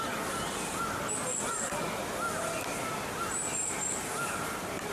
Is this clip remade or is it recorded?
recorded